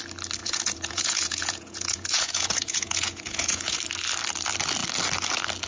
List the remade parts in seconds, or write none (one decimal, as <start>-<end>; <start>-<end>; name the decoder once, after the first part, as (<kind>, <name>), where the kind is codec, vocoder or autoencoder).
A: 0.4-3.8 (vocoder, Vocos)